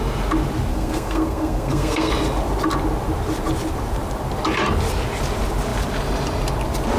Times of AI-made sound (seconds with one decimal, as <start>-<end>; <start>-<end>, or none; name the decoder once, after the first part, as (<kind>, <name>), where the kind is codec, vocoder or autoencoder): 0.7-2.1 (codec, SNAC)